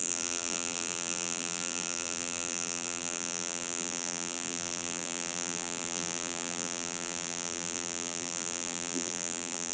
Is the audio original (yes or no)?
no